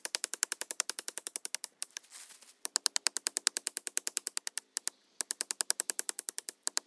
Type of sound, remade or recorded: recorded